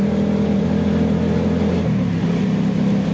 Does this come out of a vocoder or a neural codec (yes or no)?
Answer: no